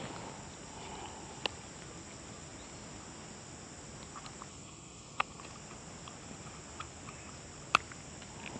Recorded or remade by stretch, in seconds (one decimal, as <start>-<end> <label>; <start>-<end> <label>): 0.0-4.5 recorded; 4.5-5.4 remade; 5.4-8.6 recorded